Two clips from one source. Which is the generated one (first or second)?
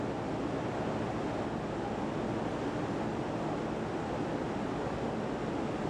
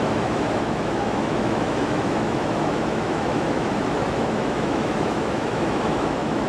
second